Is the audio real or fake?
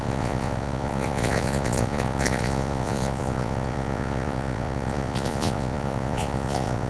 fake